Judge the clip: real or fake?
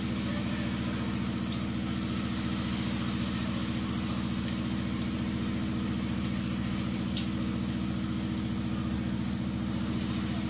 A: real